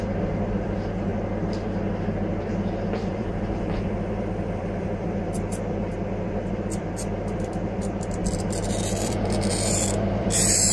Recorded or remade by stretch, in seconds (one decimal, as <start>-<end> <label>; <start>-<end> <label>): 0.0-1.1 remade; 1.1-2.4 recorded; 2.4-10.7 remade